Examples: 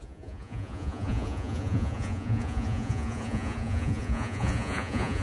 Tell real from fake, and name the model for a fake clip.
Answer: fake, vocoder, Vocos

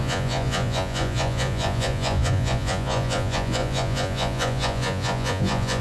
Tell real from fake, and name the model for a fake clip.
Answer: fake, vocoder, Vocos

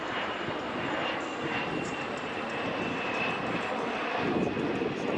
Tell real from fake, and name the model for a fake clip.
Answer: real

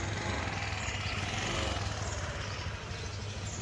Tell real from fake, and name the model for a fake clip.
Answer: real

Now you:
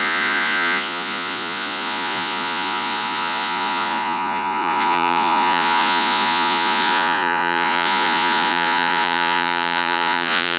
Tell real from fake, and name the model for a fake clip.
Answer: fake, vocoder, Vocos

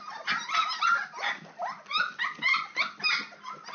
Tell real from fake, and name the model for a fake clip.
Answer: real